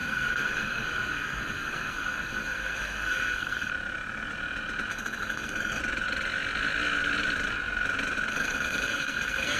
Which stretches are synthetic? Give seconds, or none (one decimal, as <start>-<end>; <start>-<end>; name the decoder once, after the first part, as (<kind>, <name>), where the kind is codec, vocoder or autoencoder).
0.0-3.7 (codec, SNAC); 4.9-5.8; 8.3-9.6